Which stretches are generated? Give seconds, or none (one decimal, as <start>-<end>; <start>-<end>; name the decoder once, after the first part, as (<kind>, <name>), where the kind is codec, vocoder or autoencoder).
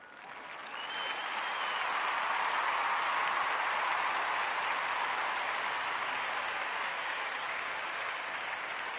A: 6.0-8.6 (codec, DAC)